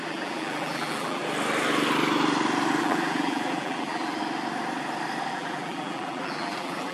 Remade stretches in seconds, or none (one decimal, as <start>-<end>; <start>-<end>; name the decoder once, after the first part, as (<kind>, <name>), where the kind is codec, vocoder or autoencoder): 0.0-1.2 (vocoder, BigVGAN v2); 2.8-4.2; 5.3-6.9